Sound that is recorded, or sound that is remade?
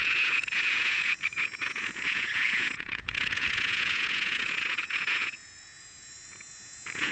remade